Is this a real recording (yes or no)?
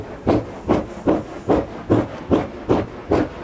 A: yes